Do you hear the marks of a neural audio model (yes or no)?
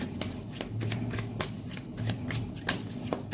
no